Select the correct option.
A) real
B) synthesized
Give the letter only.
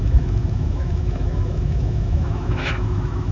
B